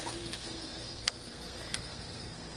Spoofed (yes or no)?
yes